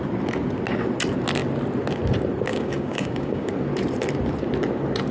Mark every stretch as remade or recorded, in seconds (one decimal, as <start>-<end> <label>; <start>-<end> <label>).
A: 0.0-2.5 recorded; 2.5-3.5 remade; 3.5-5.1 recorded